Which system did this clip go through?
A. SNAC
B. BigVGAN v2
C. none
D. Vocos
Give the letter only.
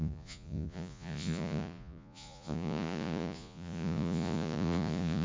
D